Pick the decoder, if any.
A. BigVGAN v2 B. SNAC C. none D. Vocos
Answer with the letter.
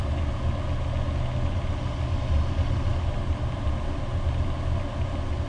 C